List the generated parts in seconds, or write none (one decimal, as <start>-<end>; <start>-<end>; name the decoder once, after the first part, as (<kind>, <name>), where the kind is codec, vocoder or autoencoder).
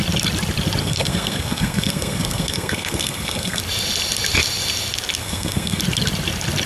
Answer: 0.8-3.6 (codec, SNAC); 5.2-5.8